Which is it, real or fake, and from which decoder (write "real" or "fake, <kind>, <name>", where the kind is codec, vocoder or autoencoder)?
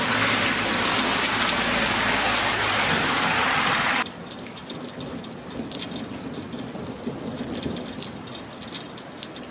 real